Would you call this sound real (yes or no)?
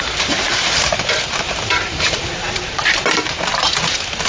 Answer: no